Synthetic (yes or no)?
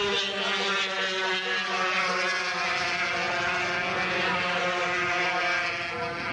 no